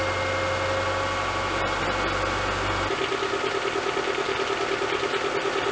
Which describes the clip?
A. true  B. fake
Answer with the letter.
A